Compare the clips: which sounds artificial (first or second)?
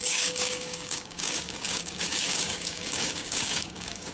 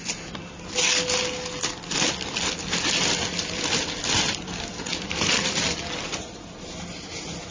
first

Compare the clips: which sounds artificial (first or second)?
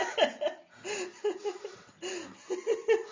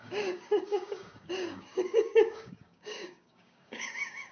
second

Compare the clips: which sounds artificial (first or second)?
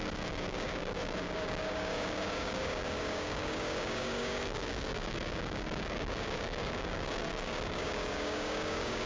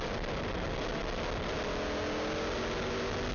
first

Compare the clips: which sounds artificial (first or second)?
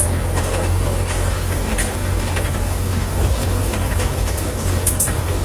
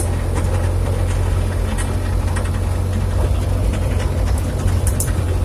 first